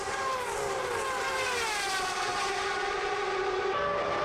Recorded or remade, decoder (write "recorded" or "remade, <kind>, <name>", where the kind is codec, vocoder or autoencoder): recorded